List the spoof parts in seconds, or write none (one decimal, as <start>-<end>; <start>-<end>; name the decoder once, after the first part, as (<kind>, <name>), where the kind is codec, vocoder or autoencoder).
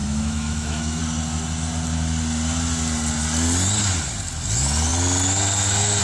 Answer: 0.0-1.0 (autoencoder, DAC-VAE)